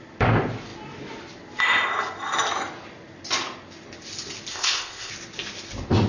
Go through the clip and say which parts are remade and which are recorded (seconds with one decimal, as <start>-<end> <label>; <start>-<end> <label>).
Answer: 0.0-4.5 recorded; 4.5-5.1 remade; 5.1-6.1 recorded

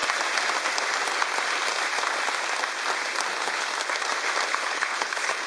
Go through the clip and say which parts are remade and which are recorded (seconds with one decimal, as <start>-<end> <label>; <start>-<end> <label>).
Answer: 0.0-3.3 recorded; 3.3-3.7 remade; 3.7-4.5 recorded; 4.5-5.5 remade

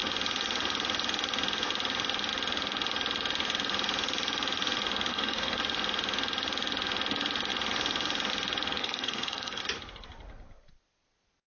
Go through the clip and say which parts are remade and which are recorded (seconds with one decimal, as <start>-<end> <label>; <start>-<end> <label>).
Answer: 0.0-5.1 recorded; 5.1-5.6 remade; 5.6-8.8 recorded; 8.8-9.6 remade; 9.6-11.5 recorded

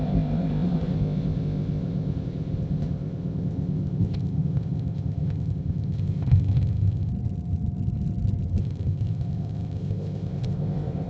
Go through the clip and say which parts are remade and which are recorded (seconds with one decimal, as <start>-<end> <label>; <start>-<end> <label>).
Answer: 0.0-7.1 remade; 7.1-8.6 recorded; 8.6-11.1 remade

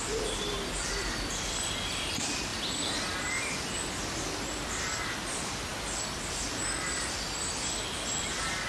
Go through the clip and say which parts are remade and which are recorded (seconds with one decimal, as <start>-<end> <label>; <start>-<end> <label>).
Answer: 0.0-8.7 recorded